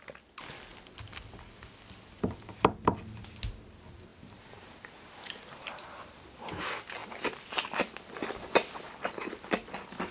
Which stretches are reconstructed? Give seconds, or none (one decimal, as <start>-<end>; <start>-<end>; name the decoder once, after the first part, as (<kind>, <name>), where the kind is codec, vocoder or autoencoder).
4.1-5.9 (vocoder, BigVGAN v2)